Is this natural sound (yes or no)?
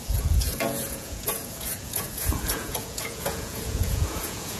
no